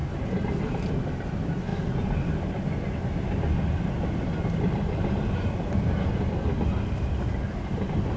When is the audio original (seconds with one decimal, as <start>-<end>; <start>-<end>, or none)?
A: 0.0-8.2